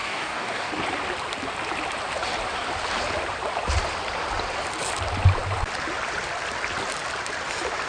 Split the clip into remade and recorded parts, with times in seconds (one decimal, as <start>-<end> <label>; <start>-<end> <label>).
0.0-0.7 remade; 0.7-7.9 recorded